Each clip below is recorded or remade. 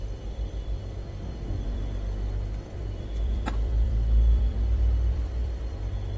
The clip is remade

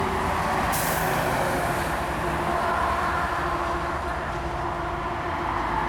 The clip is recorded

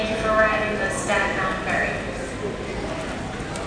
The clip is recorded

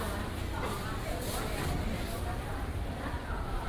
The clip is remade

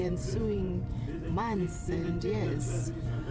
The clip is remade